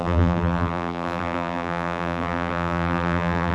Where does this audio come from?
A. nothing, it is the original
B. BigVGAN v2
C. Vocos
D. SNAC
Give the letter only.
B